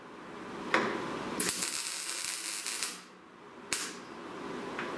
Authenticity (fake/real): real